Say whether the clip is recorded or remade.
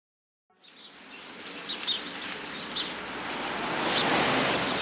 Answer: recorded